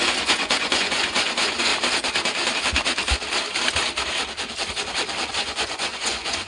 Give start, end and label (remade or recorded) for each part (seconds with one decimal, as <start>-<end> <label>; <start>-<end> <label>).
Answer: 0.0-1.7 remade; 1.7-5.3 recorded; 5.3-6.5 remade